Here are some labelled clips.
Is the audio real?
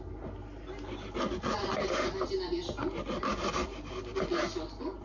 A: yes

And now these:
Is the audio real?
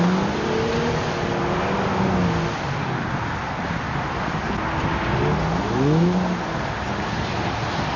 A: yes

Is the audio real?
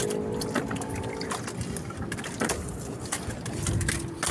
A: yes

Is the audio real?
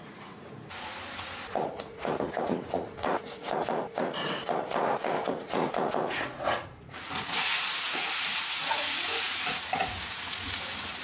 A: no